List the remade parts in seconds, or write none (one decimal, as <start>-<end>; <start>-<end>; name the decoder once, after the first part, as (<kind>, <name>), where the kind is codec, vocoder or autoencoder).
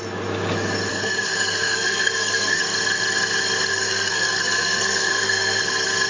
0.9-2.6 (codec, SNAC); 3.7-5.6